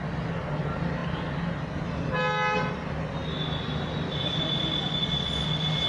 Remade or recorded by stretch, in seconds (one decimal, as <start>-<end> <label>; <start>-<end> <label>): 0.0-5.9 recorded